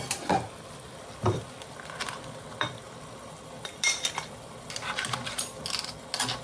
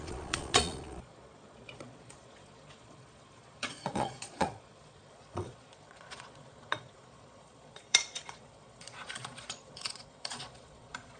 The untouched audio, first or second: first